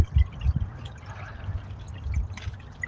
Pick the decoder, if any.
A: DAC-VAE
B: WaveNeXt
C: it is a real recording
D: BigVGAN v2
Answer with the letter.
C